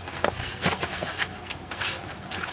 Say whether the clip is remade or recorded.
remade